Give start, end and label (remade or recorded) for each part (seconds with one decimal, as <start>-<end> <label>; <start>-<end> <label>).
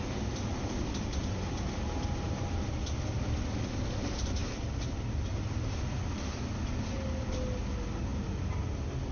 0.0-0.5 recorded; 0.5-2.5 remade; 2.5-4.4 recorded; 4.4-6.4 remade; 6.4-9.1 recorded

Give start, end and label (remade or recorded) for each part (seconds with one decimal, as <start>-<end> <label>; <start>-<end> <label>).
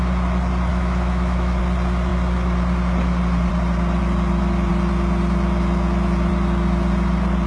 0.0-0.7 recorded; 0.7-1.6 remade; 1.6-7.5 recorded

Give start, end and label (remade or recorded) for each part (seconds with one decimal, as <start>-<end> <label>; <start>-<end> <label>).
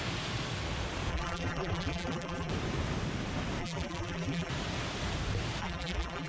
0.0-1.1 recorded; 1.1-2.5 remade; 2.5-3.6 recorded; 3.6-4.5 remade; 4.5-5.6 recorded; 5.6-6.3 remade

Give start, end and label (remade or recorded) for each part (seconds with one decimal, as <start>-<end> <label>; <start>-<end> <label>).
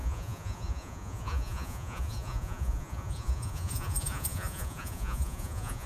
0.0-5.9 remade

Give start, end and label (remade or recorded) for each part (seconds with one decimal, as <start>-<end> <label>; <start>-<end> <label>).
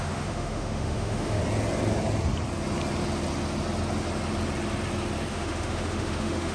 0.0-1.4 remade; 1.4-5.3 recorded; 5.3-6.5 remade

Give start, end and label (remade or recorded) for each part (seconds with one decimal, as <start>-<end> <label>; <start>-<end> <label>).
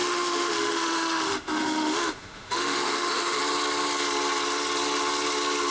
0.0-3.4 remade; 3.4-5.7 recorded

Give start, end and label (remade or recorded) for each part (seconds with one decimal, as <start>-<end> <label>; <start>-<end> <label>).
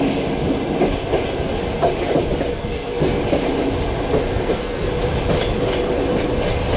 0.0-2.5 recorded; 2.5-3.2 remade; 3.2-4.3 recorded; 4.3-4.9 remade; 4.9-6.8 recorded